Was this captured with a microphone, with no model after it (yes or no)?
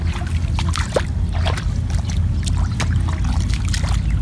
yes